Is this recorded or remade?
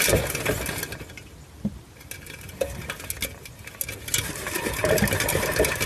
recorded